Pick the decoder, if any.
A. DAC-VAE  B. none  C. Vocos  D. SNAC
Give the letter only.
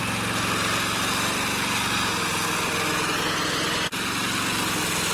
B